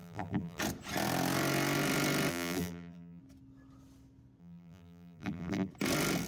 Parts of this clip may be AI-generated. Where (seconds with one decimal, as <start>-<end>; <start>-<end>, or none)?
0.0-0.6; 2.3-3.2; 4.4-5.7